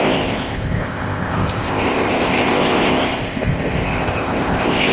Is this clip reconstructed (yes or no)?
yes